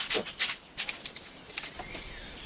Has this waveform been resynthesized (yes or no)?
no